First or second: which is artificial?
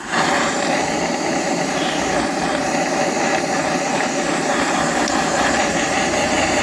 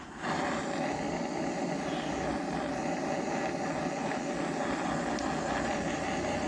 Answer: first